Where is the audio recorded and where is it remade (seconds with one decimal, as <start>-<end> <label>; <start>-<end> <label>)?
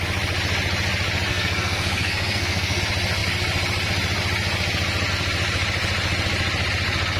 0.0-1.3 recorded; 1.3-2.8 remade; 2.8-7.2 recorded